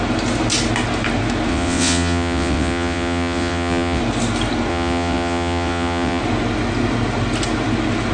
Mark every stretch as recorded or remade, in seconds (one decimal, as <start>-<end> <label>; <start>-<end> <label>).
0.0-1.5 recorded; 1.5-4.0 remade; 4.0-4.7 recorded; 4.7-6.2 remade; 6.2-8.1 recorded